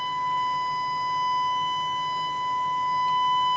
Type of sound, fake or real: real